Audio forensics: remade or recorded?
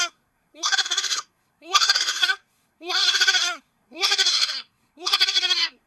remade